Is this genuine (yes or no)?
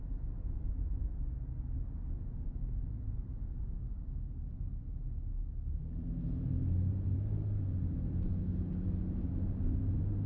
yes